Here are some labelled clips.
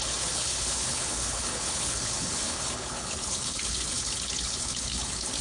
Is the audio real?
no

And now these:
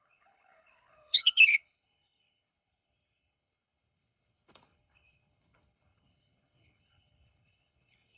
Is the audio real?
no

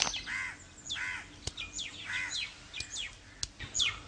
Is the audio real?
yes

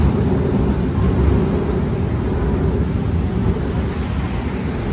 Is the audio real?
yes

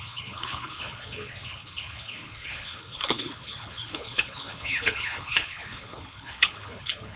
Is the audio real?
no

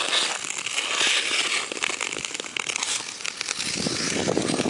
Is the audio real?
yes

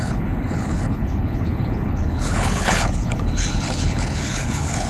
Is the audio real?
no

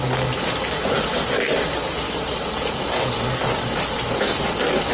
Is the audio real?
yes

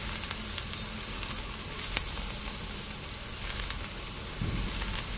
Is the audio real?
yes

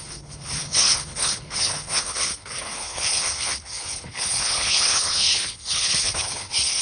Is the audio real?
no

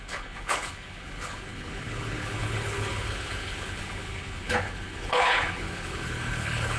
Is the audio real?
no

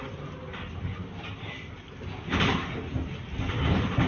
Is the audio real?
yes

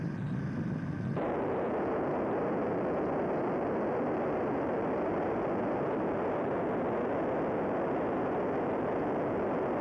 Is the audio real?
yes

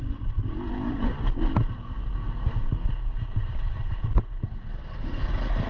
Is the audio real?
yes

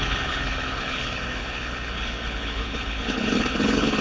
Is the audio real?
no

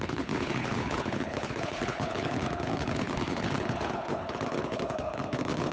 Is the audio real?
no